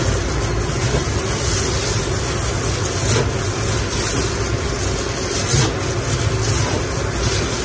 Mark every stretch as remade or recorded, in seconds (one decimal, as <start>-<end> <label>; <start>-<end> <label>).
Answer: 0.0-7.6 recorded